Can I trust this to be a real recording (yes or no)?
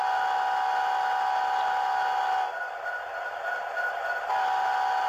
yes